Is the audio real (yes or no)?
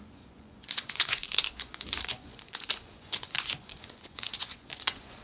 no